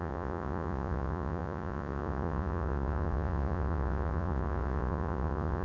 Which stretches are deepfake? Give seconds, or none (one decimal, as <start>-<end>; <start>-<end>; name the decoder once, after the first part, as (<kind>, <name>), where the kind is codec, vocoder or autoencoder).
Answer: 0.0-5.6 (vocoder, Vocos)